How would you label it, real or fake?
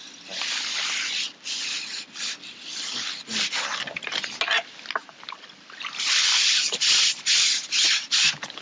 real